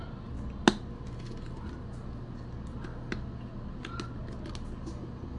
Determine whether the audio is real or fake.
real